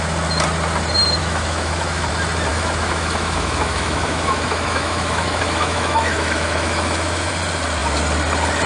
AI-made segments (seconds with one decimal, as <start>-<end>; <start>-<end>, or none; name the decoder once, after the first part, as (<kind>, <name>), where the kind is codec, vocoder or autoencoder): 1.2-2.1 (autoencoder, DAC-VAE); 2.5-7.3